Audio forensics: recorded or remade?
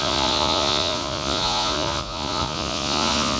remade